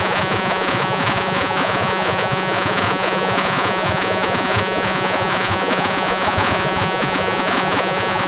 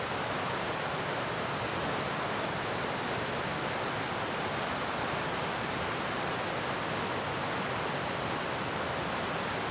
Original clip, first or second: second